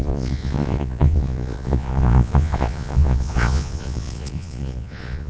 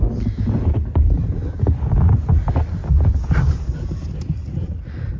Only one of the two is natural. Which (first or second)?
second